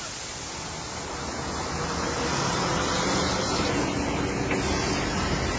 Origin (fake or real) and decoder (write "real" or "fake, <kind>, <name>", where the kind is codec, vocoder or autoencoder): real